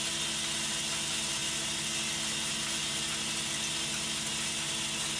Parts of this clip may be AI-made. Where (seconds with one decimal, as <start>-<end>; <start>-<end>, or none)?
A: none